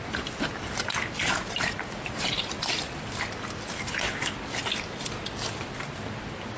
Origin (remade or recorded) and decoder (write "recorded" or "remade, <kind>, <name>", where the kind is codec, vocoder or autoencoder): recorded